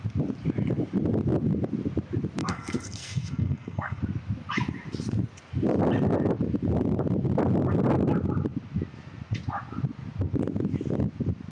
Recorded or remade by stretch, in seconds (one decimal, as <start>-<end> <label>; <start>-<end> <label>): 0.0-2.4 recorded; 2.4-4.0 remade; 4.0-11.5 recorded